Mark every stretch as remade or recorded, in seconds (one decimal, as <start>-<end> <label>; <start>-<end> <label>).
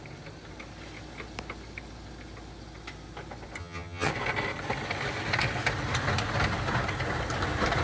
0.0-3.6 recorded; 3.6-4.1 remade; 4.1-7.8 recorded